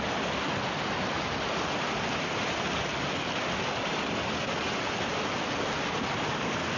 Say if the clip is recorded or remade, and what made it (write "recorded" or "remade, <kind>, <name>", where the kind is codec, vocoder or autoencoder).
recorded